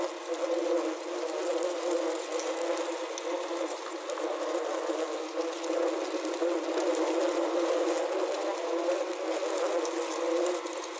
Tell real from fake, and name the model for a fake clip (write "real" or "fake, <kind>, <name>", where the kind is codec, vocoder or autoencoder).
real